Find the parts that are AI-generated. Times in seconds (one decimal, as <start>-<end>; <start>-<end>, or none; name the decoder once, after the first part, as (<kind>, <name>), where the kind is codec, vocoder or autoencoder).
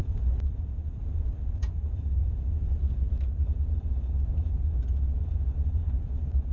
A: 0.0-2.2 (vocoder, BigVGAN v2); 6.0-6.5